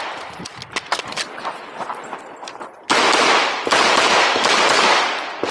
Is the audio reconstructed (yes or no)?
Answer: no